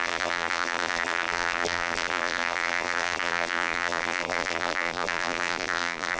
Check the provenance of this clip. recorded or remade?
remade